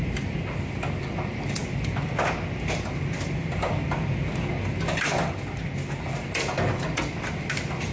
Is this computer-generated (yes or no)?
no